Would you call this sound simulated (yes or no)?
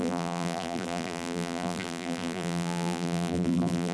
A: yes